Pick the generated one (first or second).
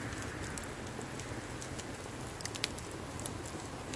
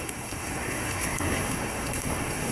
second